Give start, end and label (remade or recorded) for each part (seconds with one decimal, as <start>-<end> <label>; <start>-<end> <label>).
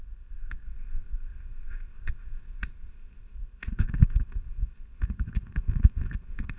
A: 0.0-6.6 remade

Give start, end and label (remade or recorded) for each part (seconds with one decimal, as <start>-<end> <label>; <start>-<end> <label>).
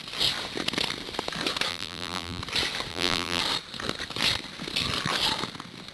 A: 0.0-1.7 recorded; 1.7-2.4 remade; 2.4-2.9 recorded; 2.9-3.4 remade; 3.4-5.9 recorded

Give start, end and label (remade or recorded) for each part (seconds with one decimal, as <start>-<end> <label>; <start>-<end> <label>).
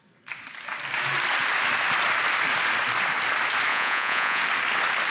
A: 0.0-3.7 recorded; 3.7-4.4 remade; 4.4-5.1 recorded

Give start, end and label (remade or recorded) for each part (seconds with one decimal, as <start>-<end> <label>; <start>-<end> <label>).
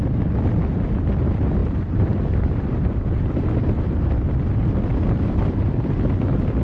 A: 0.0-1.6 recorded; 1.6-4.1 remade; 4.1-6.6 recorded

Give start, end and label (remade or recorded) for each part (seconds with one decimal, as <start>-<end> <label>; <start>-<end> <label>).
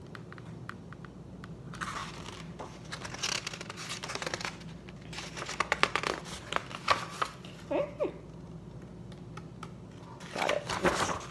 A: 0.0-11.3 recorded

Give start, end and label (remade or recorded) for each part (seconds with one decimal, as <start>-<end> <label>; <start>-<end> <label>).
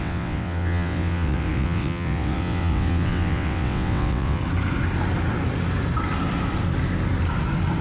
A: 0.0-4.4 remade; 4.4-7.8 recorded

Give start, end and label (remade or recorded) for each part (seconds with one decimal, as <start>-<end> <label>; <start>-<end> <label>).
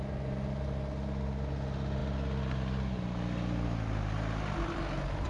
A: 0.0-5.3 recorded